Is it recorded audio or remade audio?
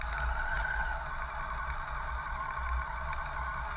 recorded